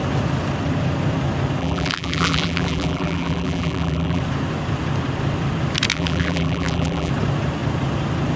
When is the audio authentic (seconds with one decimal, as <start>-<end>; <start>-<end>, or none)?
0.0-1.6; 4.2-5.9; 7.1-8.4